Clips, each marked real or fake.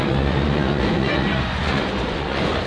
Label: fake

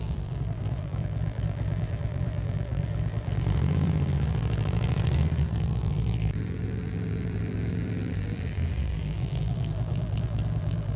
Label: fake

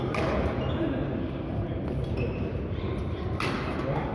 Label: real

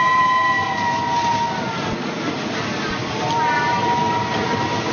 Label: real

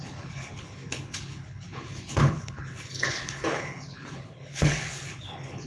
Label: fake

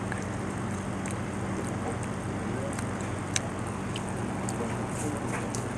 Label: real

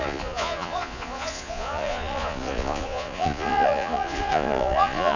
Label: fake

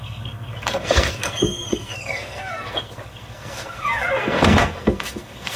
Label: fake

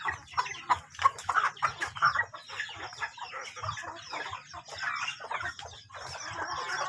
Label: real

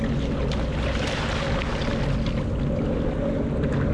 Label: real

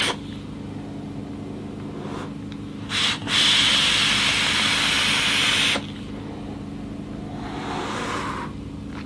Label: real